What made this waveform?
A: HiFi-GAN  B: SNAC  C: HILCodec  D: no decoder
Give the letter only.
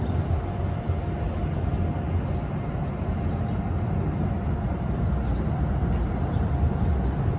D